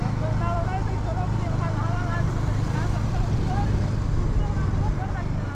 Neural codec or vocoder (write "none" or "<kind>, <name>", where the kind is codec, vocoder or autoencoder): none